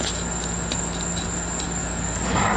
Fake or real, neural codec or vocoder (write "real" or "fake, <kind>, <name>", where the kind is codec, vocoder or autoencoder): real